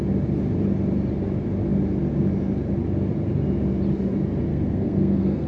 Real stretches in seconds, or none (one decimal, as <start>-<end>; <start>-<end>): 0.0-4.5